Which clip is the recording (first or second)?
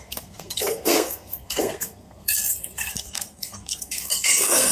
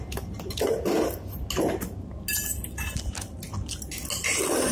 second